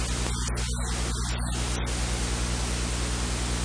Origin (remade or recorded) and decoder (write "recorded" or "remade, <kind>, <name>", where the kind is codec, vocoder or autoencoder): recorded